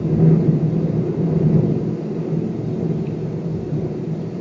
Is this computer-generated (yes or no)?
no